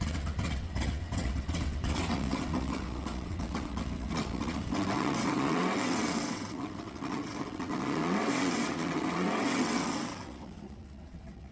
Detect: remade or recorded remade